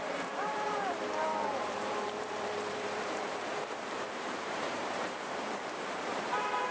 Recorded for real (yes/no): no